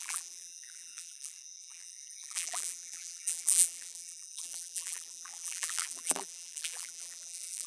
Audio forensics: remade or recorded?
remade